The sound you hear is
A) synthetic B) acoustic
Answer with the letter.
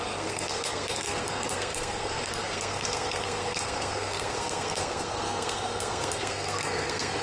A